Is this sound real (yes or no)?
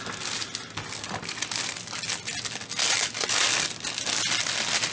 yes